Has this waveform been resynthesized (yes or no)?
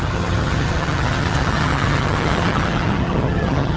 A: yes